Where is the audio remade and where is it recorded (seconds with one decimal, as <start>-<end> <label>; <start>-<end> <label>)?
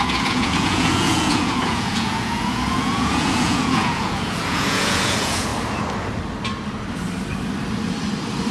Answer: 0.0-5.5 remade; 5.5-8.5 recorded